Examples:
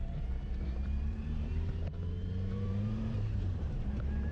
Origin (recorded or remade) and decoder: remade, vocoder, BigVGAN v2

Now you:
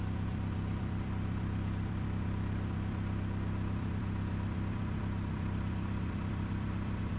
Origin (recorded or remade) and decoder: remade, vocoder, BigVGAN v2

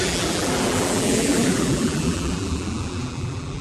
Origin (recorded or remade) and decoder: remade, vocoder, BigVGAN v2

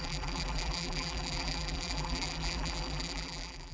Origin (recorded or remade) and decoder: remade, vocoder, BigVGAN v2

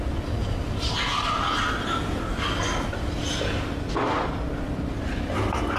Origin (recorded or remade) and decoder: recorded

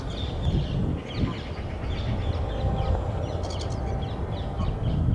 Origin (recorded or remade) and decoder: recorded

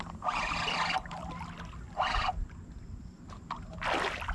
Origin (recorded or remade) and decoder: recorded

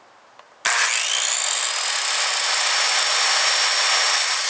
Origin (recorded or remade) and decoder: recorded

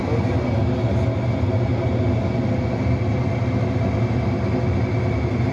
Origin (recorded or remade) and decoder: recorded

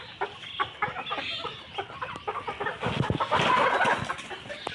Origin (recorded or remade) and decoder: recorded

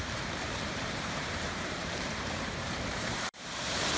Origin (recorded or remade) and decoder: remade, vocoder, BigVGAN v2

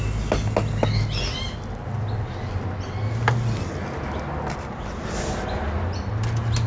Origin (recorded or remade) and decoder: recorded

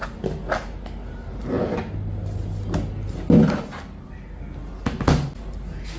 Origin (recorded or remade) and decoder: recorded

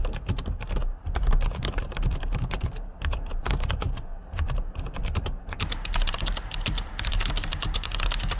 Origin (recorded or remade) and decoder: remade, vocoder, BigVGAN v2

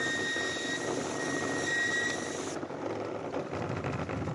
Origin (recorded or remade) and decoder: recorded